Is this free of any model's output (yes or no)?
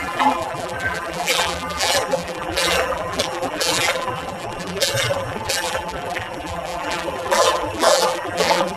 no